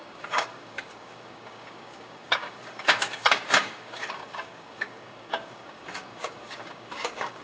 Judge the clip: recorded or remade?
remade